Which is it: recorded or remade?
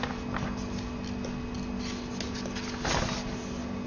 recorded